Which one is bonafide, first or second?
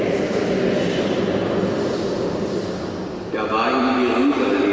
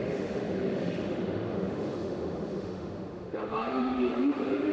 first